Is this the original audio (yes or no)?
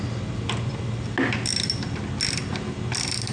yes